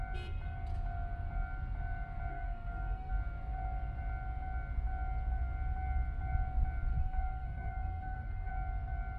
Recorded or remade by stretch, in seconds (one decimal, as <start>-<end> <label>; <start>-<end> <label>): 0.0-2.3 recorded; 2.3-3.1 remade; 3.1-6.9 recorded; 6.9-8.5 remade; 8.5-9.2 recorded